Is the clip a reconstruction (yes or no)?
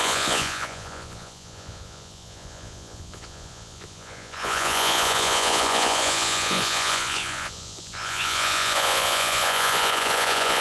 yes